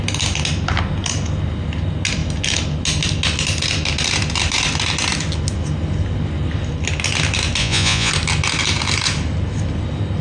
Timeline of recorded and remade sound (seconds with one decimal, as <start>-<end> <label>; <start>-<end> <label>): 0.0-7.6 recorded; 7.6-8.1 remade; 8.1-10.2 recorded

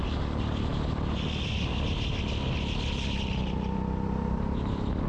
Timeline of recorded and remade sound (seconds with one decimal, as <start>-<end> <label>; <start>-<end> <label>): 0.0-5.1 recorded

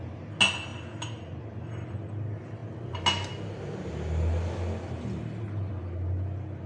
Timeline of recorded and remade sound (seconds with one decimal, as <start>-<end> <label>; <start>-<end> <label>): 0.0-6.7 recorded

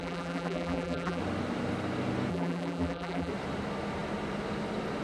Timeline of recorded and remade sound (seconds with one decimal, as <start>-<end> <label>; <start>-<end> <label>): 0.0-1.2 remade; 1.2-2.3 recorded; 2.3-3.3 remade; 3.3-5.0 recorded

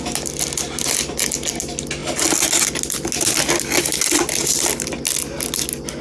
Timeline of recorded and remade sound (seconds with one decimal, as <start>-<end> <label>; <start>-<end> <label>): 0.0-6.0 recorded

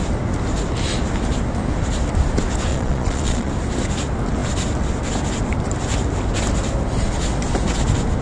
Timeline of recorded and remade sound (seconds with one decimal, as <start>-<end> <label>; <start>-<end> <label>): 0.0-2.7 recorded; 2.7-3.5 remade; 3.5-8.2 recorded